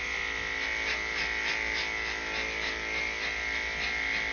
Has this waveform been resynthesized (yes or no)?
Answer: no